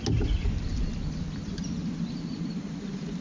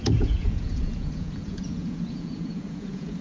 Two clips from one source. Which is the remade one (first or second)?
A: second